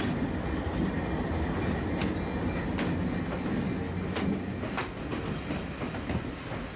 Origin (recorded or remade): recorded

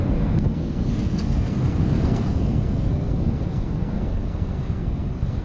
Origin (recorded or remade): remade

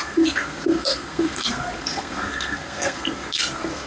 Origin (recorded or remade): remade